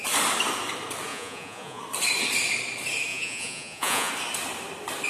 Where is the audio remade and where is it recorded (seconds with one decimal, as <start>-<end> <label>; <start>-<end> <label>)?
0.0-1.1 recorded; 1.1-1.8 remade; 1.8-3.1 recorded; 3.1-4.1 remade; 4.1-5.1 recorded